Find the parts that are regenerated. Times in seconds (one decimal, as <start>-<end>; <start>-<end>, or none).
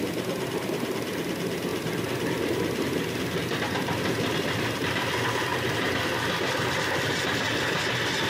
none